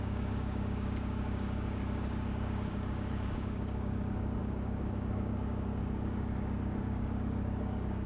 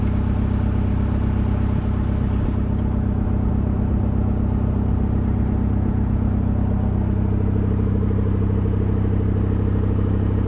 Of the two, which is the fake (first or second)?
first